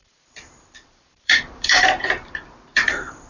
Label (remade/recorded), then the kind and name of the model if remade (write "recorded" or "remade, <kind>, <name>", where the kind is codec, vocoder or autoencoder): remade, vocoder, BigVGAN v2